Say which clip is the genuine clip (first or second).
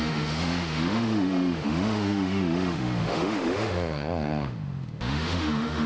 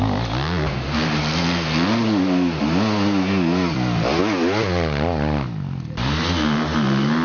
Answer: second